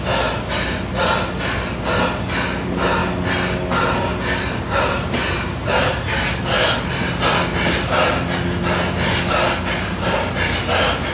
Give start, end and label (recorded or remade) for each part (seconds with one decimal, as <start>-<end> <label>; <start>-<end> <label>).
0.0-11.1 recorded